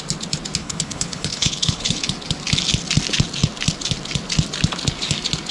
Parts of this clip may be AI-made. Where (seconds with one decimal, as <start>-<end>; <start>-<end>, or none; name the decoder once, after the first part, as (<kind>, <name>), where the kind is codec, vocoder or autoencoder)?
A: 0.6-2.0 (codec, HILCodec)